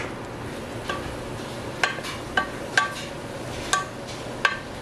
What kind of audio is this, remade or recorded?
recorded